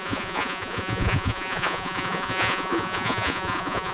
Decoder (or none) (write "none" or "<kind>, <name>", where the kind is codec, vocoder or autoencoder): vocoder, Vocos